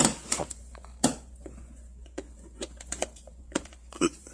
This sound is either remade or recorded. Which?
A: remade